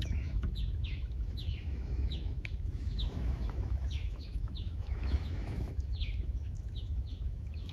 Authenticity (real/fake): fake